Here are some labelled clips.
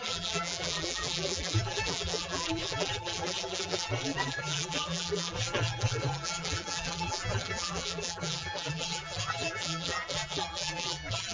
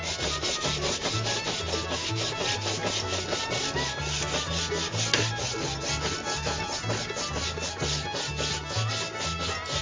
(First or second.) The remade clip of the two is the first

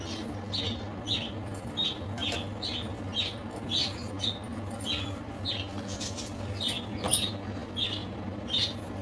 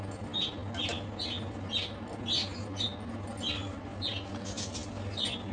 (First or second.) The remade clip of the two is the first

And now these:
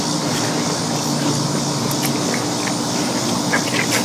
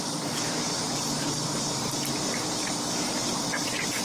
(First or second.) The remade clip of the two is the second